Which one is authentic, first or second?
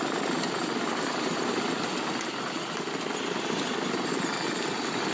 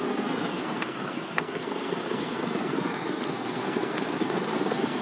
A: first